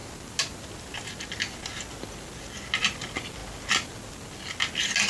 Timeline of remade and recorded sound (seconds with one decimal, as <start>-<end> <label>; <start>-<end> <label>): 0.0-5.1 recorded